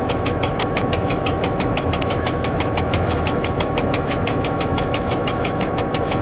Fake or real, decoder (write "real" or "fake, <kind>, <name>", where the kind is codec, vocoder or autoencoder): fake, autoencoder, DAC-VAE